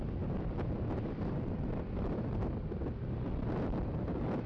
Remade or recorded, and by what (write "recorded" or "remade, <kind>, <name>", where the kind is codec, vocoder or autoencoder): recorded